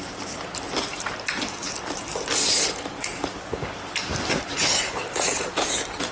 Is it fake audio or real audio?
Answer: fake